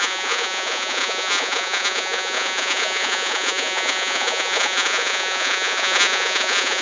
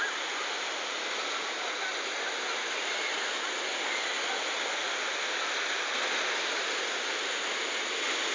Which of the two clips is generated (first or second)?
first